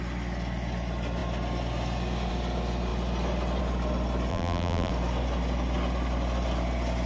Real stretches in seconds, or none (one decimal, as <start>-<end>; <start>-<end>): 0.0-4.3; 4.9-7.1